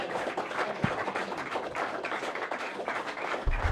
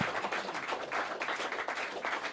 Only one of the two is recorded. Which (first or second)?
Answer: second